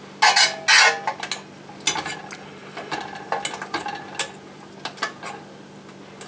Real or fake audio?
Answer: real